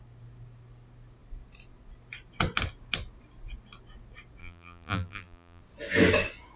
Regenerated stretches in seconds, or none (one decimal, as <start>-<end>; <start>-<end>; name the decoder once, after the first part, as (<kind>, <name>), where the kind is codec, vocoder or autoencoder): 4.4-5.6 (vocoder, BigVGAN v2)